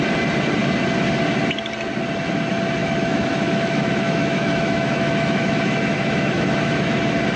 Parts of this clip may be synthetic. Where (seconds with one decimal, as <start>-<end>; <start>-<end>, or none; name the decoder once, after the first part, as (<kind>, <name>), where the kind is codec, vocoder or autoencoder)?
2.8-7.0 (autoencoder, DAC-VAE)